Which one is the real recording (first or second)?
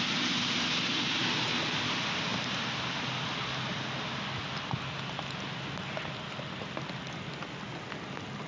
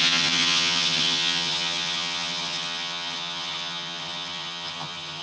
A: first